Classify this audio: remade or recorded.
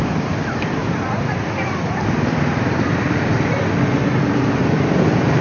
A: remade